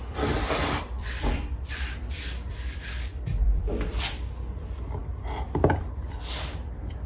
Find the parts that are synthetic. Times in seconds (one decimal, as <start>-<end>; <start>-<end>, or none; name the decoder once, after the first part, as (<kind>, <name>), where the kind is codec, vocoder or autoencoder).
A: 0.0-5.0 (vocoder, BigVGAN v2); 5.7-7.1